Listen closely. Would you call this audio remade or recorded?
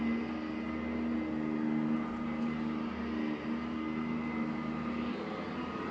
recorded